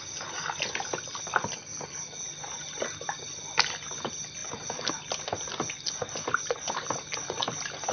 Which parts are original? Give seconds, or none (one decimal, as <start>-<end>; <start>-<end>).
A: 0.0-7.9